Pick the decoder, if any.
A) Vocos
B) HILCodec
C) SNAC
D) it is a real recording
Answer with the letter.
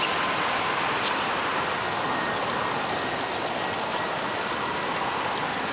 D